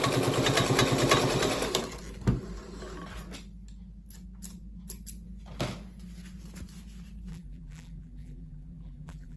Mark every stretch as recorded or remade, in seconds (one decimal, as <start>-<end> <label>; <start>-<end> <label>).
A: 0.0-7.3 recorded; 7.3-9.4 remade